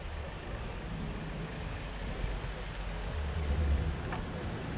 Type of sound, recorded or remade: recorded